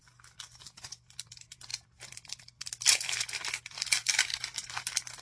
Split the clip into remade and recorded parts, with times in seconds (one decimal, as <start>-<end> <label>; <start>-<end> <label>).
0.0-5.2 recorded